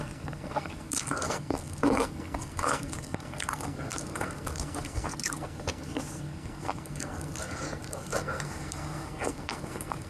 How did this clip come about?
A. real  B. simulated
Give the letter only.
B